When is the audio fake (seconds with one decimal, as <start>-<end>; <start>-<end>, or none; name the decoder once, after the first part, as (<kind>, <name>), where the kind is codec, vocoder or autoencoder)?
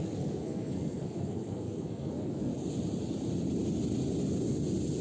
0.0-2.5 (codec, SNAC)